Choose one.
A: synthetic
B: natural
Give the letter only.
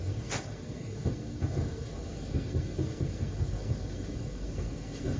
A